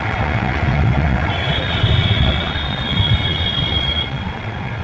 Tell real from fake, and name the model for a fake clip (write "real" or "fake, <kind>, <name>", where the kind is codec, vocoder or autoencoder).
fake, vocoder, WaveNeXt